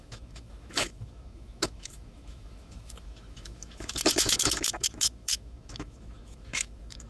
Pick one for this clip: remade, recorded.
remade